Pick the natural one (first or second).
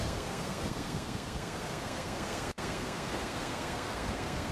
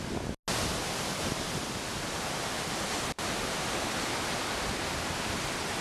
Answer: second